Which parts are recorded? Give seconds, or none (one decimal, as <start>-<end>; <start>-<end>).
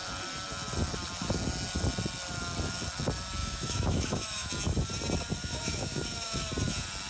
0.0-3.4; 4.5-5.4; 6.5-7.1